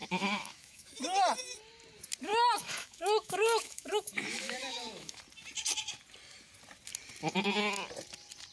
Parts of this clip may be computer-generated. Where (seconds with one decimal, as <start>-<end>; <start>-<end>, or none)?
0.0-1.0; 2.3-5.2